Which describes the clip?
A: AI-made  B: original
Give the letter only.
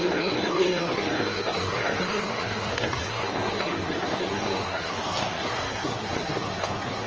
A